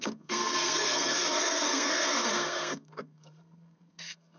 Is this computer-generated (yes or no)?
yes